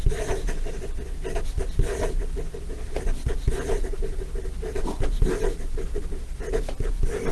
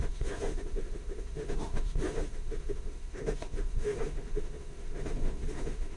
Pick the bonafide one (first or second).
first